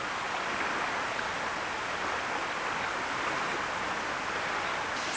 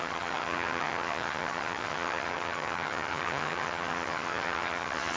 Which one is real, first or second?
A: first